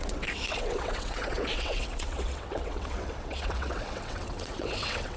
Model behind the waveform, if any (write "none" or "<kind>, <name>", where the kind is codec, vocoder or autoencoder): vocoder, WaveNeXt